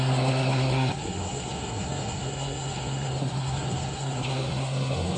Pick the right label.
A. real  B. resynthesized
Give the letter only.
B